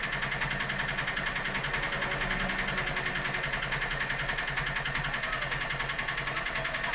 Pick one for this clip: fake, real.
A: real